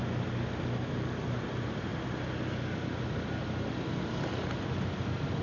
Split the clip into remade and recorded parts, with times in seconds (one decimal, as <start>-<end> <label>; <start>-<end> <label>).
0.0-1.3 recorded; 1.3-1.9 remade; 1.9-5.4 recorded